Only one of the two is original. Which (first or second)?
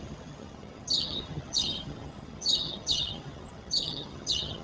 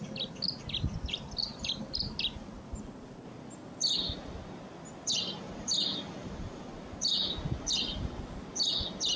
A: second